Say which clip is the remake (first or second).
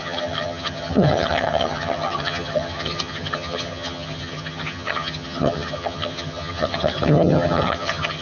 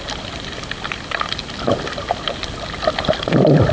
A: first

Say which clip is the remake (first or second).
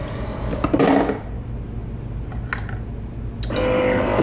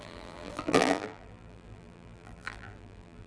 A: second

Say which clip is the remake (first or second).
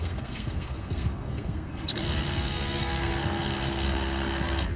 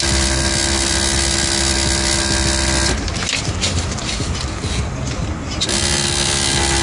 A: first